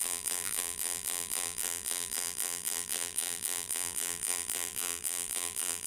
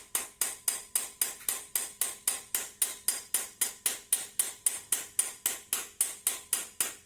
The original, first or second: second